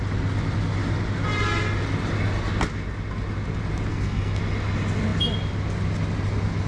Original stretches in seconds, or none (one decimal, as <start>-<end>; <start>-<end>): 0.0-3.9; 4.4-6.7